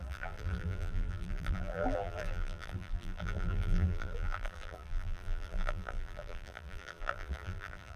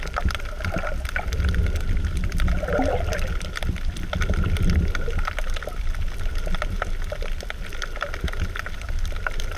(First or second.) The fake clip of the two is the first